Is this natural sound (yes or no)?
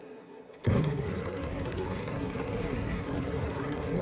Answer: no